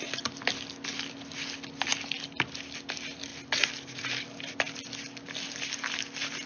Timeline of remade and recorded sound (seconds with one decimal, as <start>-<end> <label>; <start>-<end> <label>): 0.0-6.5 recorded